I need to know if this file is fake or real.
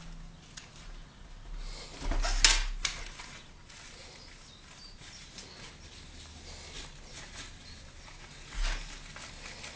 real